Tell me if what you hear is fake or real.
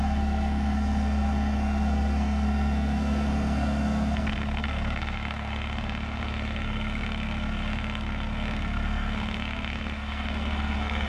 fake